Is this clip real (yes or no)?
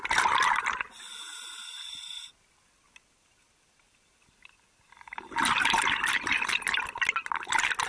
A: yes